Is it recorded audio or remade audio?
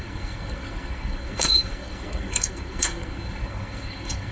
remade